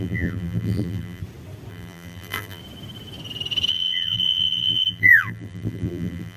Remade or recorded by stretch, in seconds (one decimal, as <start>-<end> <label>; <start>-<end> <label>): 0.0-1.2 remade; 1.2-1.7 recorded; 1.7-2.6 remade; 2.6-3.7 recorded; 3.7-6.4 remade